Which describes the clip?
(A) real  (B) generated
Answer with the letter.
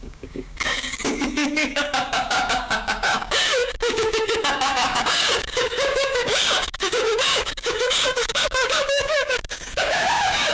B